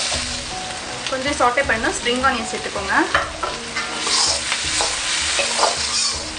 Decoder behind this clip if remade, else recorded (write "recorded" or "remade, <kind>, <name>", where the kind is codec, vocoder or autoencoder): recorded